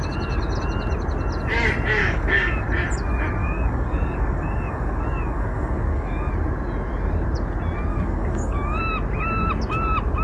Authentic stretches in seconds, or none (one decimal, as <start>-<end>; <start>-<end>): 0.0-2.0; 2.6-3.4; 6.3-7.9; 8.8-10.2